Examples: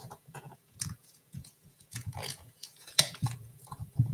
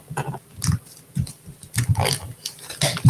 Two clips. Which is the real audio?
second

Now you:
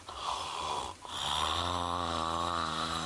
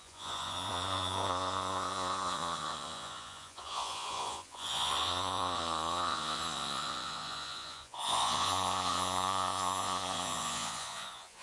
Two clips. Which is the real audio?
first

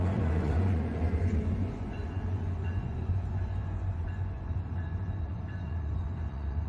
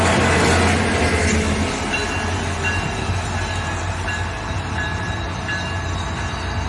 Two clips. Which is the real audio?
second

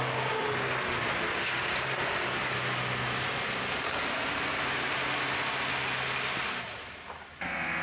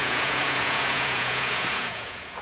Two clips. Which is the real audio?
first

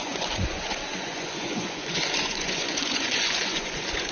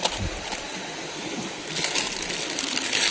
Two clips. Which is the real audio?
second